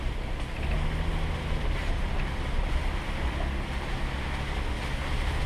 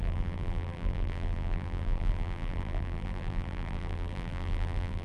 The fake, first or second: second